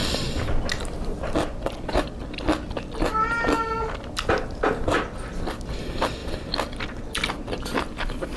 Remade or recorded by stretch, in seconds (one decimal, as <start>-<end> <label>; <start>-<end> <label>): 0.0-8.4 recorded